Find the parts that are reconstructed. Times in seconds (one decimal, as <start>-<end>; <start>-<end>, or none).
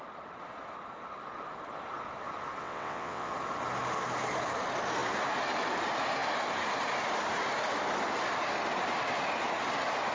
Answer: 2.6-3.3